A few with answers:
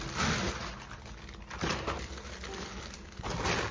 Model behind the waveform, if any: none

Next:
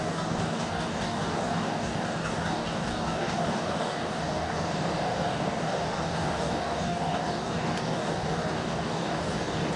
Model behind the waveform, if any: codec, DAC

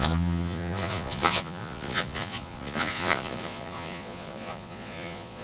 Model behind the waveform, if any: vocoder, Vocos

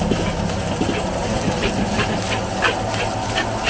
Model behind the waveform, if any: none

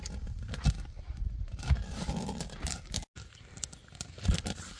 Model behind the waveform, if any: none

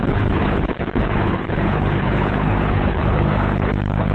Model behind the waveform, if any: codec, HILCodec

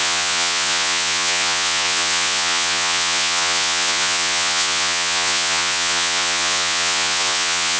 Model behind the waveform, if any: vocoder, Vocos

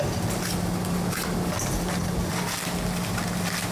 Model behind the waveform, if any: none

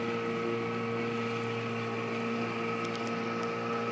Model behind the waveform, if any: none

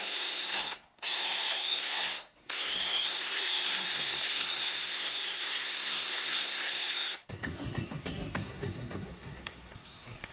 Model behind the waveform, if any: codec, SNAC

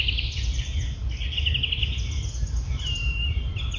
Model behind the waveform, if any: none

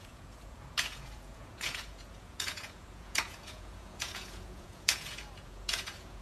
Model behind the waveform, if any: vocoder, Vocos